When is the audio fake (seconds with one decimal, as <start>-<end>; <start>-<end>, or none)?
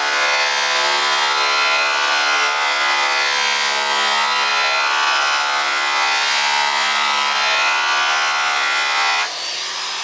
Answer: none